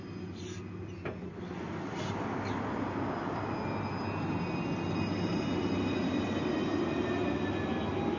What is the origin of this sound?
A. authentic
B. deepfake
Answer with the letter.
A